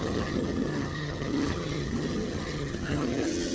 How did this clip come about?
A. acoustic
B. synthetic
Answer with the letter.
B